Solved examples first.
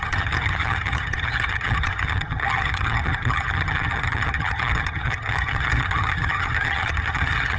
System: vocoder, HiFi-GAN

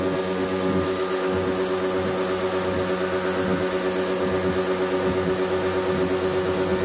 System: none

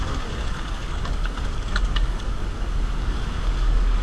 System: codec, DAC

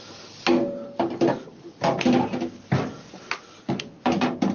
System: none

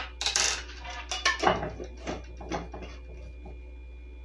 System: none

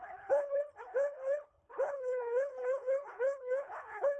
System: codec, HILCodec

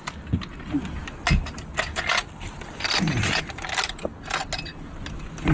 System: none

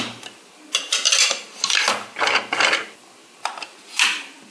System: none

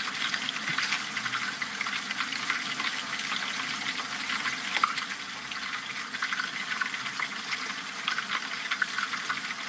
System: none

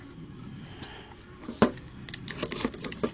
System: none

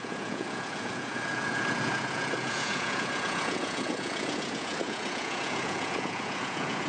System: vocoder, Vocos